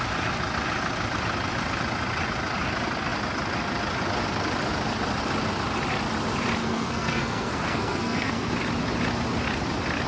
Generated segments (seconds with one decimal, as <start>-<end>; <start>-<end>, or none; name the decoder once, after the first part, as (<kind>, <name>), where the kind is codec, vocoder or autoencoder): 6.6-8.5 (codec, SNAC)